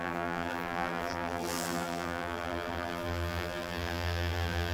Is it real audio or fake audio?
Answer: fake